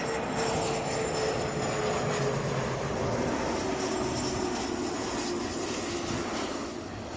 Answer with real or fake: real